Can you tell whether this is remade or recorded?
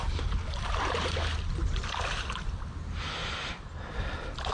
recorded